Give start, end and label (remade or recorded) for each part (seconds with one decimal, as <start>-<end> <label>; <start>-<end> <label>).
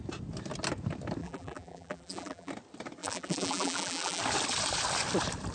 0.0-1.2 recorded; 1.2-2.5 remade; 2.5-3.0 recorded; 3.0-4.2 remade; 4.2-5.5 recorded